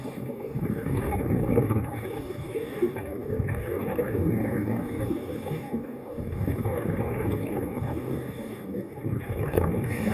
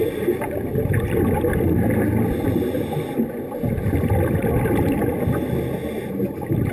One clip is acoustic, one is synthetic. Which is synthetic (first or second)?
first